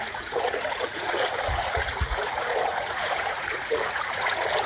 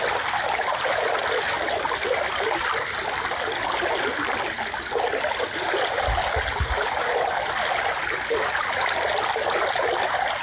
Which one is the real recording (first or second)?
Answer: second